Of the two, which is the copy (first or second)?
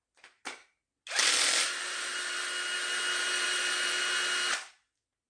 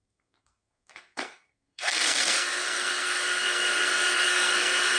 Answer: second